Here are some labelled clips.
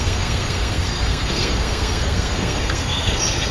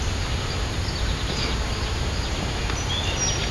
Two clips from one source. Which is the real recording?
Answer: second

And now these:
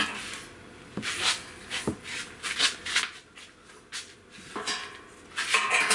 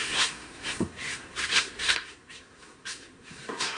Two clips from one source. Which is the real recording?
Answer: first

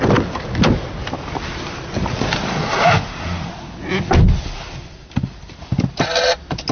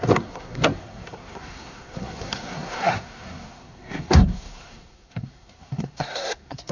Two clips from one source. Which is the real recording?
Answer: first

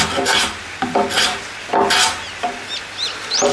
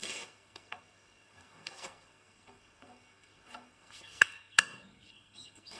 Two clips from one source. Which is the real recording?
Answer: first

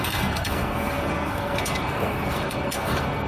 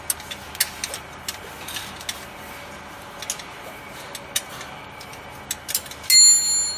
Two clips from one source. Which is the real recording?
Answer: second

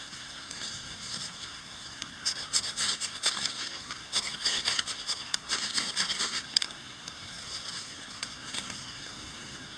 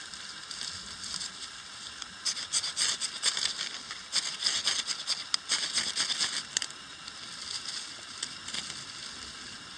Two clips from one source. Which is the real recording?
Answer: second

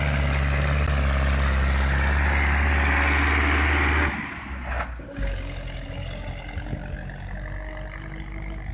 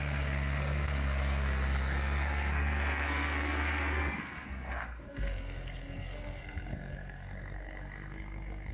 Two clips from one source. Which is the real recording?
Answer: first